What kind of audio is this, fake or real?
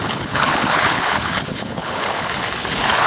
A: fake